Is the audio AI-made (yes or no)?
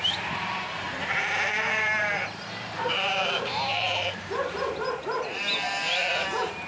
yes